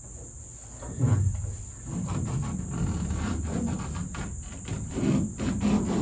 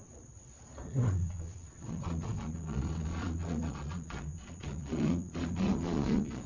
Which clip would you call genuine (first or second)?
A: first